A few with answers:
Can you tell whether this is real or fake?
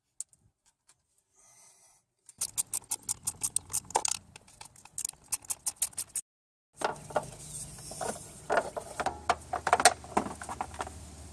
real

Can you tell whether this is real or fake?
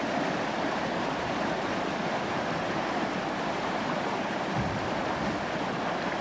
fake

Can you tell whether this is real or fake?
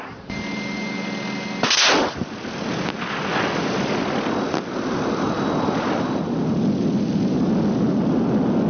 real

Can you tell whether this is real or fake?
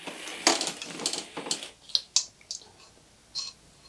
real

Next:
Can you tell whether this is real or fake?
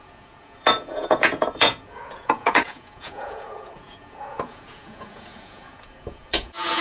fake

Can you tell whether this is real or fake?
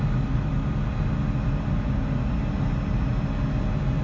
real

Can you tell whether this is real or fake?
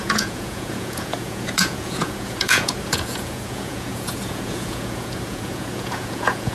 fake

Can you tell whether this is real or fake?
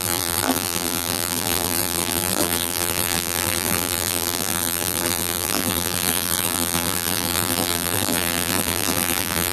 fake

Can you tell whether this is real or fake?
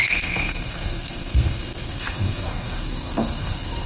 fake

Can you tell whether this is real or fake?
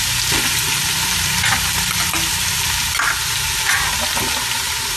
real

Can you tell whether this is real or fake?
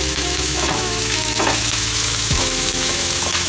fake